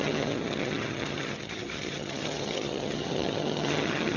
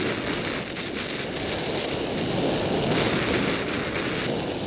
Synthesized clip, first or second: first